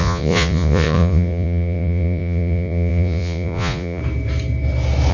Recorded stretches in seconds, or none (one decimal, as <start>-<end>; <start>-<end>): 4.0-5.1